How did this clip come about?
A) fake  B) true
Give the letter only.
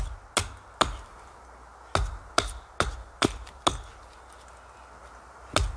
B